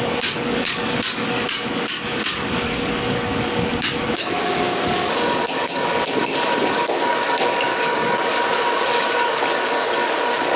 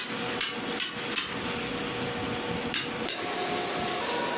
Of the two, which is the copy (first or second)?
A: first